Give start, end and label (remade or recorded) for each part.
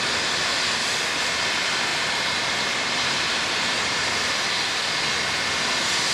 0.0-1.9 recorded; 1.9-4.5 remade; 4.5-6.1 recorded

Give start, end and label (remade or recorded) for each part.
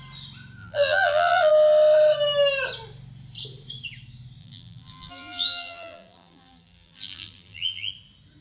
0.0-0.6 recorded; 0.6-1.5 remade; 1.5-4.4 recorded; 4.4-7.9 remade; 7.9-8.4 recorded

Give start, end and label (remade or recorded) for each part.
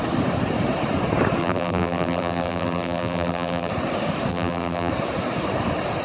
0.0-1.4 recorded; 1.4-3.7 remade; 3.7-4.3 recorded; 4.3-4.9 remade; 4.9-6.0 recorded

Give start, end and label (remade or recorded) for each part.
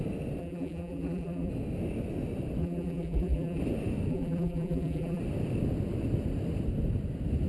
0.0-0.4 recorded; 0.4-1.5 remade; 1.5-2.6 recorded; 2.6-3.6 remade; 3.6-4.1 recorded; 4.1-5.2 remade; 5.2-7.5 recorded